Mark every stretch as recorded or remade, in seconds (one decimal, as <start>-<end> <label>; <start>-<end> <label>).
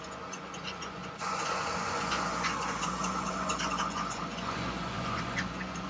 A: 0.0-5.9 remade